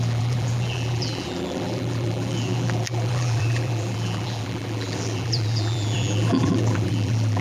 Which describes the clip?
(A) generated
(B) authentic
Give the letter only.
A